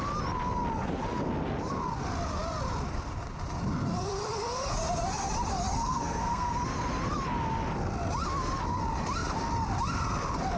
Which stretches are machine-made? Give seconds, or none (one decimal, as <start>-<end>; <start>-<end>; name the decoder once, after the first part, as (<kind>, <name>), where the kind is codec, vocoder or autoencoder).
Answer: 5.7-6.5 (codec, SNAC)